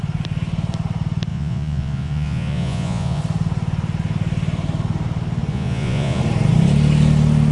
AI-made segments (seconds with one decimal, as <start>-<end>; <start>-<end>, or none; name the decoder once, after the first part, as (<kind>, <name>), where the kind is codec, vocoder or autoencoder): 1.3-3.2 (vocoder, Vocos); 5.5-6.2